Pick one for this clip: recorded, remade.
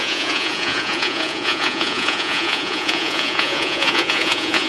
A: remade